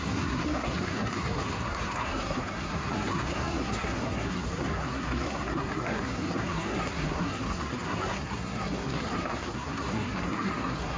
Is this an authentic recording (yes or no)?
no